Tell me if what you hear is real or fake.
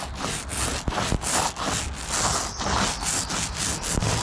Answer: real